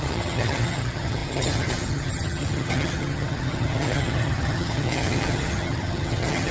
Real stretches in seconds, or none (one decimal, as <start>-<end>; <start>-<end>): none